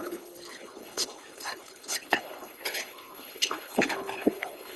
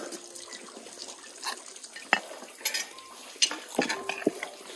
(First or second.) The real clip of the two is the second